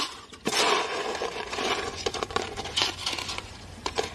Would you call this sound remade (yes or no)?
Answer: yes